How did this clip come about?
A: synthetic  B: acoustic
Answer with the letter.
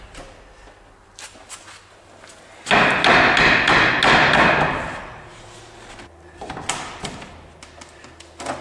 B